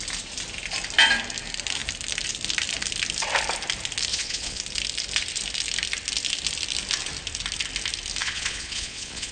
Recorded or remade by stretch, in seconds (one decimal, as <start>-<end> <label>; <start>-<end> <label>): 0.0-4.1 recorded; 4.1-4.6 remade; 4.6-8.2 recorded; 8.2-9.3 remade